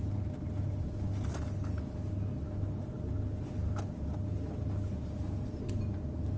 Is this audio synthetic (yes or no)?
no